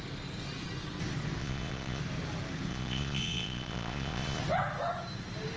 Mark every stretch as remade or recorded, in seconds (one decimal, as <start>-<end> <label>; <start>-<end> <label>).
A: 0.0-1.4 recorded; 1.4-2.0 remade; 2.0-2.7 recorded; 2.7-4.4 remade; 4.4-5.6 recorded